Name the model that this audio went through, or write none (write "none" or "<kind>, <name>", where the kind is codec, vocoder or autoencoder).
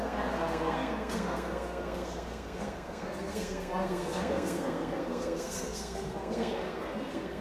codec, SNAC